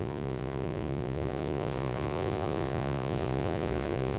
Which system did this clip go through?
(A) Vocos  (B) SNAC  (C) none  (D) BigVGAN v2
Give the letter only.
A